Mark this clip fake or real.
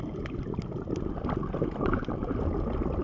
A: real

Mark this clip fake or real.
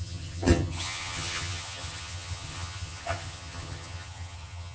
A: fake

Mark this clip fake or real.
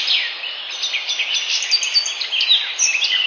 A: real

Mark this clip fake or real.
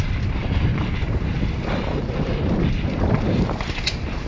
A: real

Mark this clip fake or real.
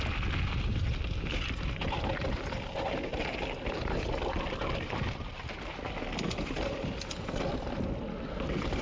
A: real